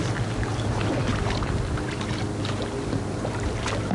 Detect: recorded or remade recorded